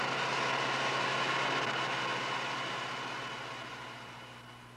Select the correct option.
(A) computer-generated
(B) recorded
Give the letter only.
B